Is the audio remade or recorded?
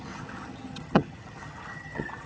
remade